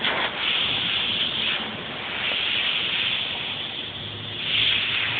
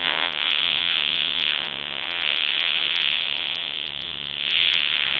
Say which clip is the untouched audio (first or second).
first